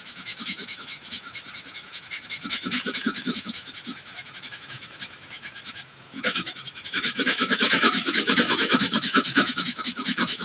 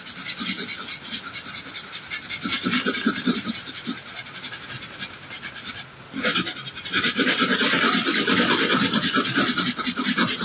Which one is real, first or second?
second